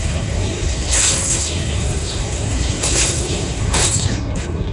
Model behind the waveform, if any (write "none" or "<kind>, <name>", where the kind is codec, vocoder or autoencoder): codec, SNAC